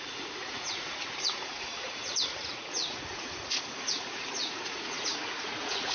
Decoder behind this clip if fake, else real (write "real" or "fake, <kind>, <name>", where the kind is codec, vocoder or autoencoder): fake, vocoder, Vocos